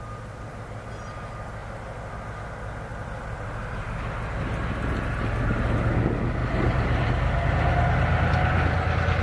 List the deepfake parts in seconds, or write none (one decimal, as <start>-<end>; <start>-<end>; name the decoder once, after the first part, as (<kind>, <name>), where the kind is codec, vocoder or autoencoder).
2.9-4.0 (vocoder, BigVGAN v2); 6.4-7.5